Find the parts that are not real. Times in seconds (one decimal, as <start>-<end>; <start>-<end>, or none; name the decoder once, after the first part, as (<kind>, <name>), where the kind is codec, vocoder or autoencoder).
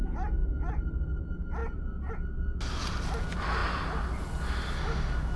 none